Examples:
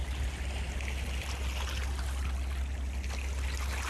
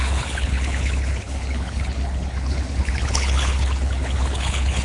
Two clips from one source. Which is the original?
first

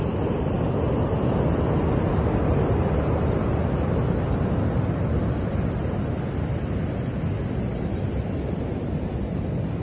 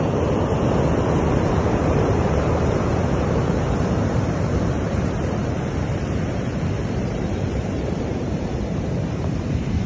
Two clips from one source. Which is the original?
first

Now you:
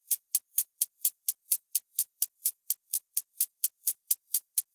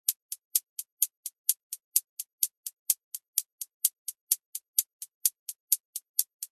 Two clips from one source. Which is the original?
second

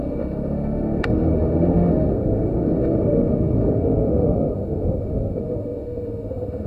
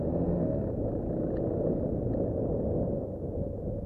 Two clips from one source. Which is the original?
second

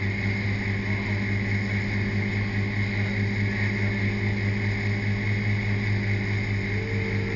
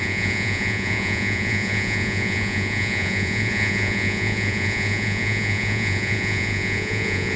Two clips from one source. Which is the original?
first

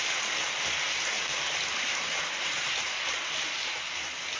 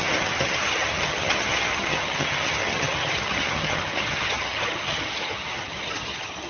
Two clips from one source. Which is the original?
first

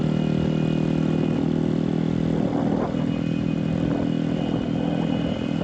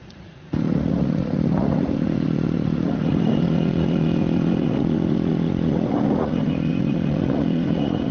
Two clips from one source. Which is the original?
first